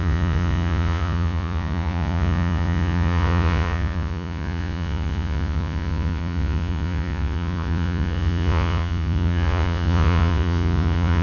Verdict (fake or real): fake